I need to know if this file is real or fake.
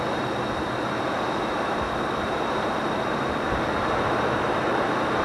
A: fake